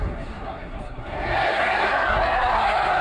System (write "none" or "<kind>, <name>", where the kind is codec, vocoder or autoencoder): codec, SNAC